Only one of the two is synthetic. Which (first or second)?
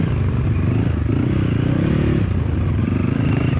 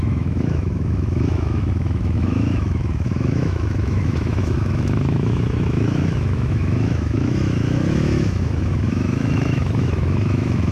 second